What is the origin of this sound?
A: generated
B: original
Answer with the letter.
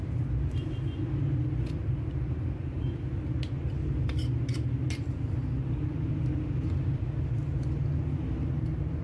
B